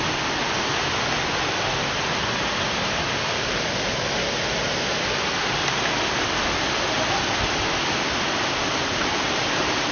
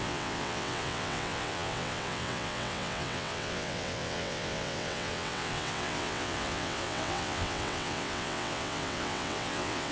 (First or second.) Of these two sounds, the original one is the first